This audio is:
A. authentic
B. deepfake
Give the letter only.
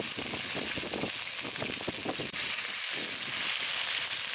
A